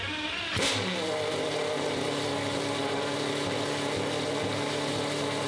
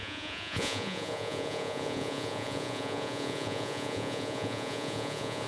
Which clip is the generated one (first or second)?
second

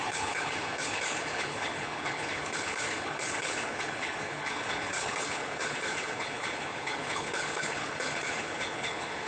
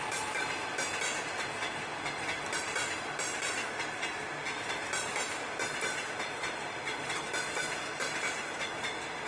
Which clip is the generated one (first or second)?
first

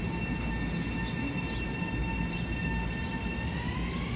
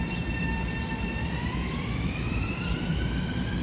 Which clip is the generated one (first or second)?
second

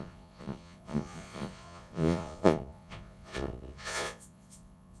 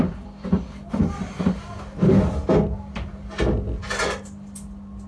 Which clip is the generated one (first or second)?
first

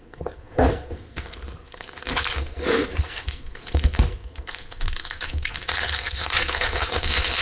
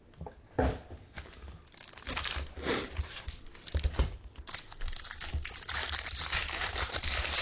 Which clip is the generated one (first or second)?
first